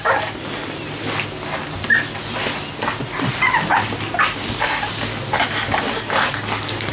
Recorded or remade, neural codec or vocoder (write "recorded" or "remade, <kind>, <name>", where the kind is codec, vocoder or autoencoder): recorded